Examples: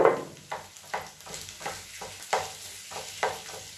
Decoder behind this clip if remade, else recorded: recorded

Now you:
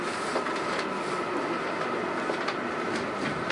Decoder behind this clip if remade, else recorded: recorded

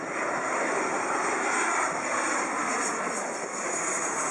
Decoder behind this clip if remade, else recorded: recorded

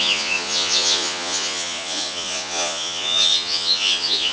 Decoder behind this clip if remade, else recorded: remade, vocoder, Vocos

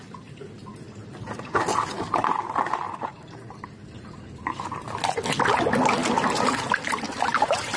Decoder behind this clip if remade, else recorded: recorded